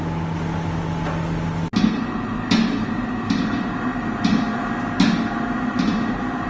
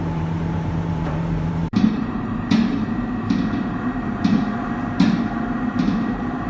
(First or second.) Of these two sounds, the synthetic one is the second